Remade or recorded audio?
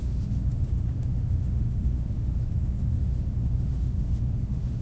remade